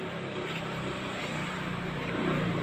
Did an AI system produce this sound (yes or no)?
no